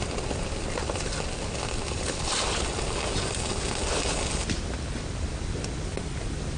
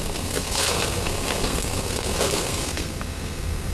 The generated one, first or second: second